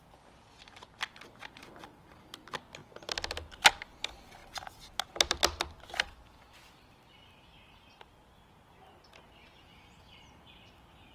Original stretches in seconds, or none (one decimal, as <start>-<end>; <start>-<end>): 0.0-1.4; 2.4-4.4; 4.9-11.1